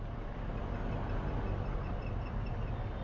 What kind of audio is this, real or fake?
real